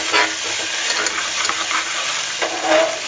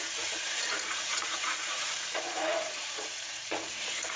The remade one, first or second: second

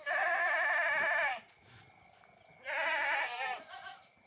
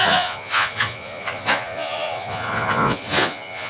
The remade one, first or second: second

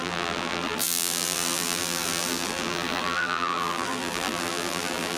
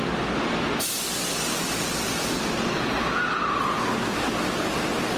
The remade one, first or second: first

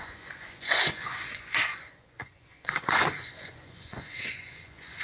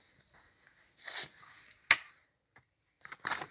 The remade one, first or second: first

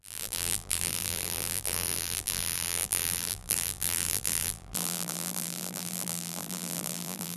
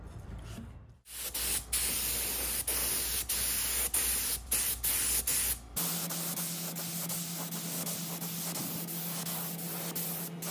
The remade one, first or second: first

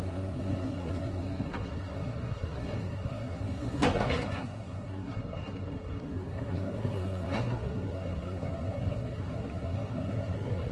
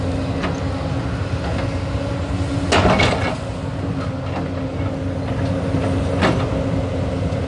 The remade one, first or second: first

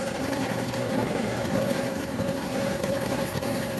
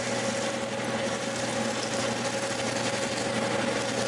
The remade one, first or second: first